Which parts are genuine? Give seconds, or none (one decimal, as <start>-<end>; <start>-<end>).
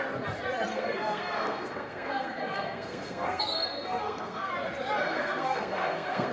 0.0-0.7; 4.5-5.0